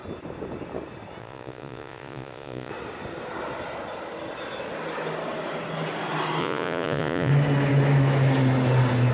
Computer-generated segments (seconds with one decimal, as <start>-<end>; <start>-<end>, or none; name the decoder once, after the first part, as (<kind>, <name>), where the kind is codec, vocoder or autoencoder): 1.2-2.7 (vocoder, Vocos); 6.4-7.3

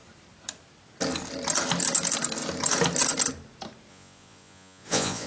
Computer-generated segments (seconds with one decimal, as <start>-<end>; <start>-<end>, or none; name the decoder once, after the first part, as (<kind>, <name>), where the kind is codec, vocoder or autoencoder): 3.9-5.3 (vocoder, Vocos)

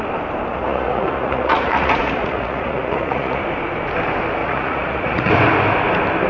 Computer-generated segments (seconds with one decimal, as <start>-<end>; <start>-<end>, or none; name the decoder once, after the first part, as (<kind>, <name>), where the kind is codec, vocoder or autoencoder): 0.5-3.4 (vocoder, Vocos); 4.4-5.3

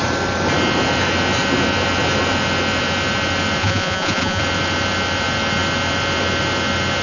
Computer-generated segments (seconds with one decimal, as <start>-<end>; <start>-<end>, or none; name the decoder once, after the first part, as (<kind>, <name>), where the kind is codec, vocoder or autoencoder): 3.6-4.4 (vocoder, Vocos)

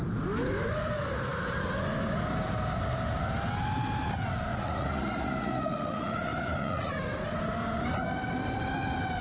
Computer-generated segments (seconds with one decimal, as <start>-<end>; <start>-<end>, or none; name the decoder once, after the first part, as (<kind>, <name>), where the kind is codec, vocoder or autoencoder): 4.5-6.9 (vocoder, Vocos)

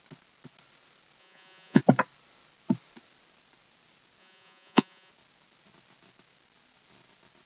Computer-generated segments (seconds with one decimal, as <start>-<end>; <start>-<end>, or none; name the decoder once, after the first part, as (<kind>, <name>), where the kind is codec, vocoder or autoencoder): 1.2-1.8 (vocoder, Vocos); 4.2-5.1

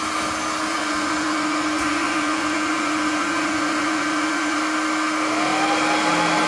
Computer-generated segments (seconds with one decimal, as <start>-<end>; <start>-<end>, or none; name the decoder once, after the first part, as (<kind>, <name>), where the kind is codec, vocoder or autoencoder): 0.7-4.6 (vocoder, Vocos)